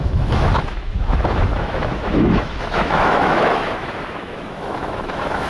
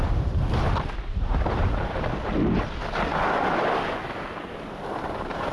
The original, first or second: second